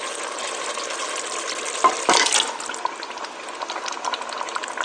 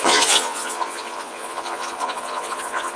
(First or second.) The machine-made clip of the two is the second